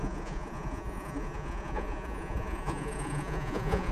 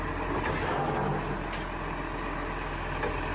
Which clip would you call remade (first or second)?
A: first